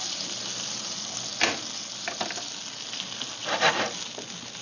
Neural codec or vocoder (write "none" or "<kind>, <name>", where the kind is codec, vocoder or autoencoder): none